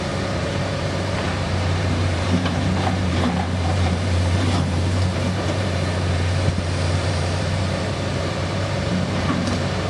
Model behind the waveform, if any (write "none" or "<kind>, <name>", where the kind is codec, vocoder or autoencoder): vocoder, BigVGAN v2